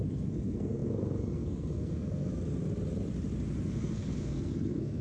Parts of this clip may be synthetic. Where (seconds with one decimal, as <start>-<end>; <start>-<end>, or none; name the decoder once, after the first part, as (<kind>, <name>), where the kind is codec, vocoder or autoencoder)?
0.0-2.3 (codec, SNAC); 3.6-5.0